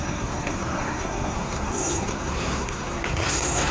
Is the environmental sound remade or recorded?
remade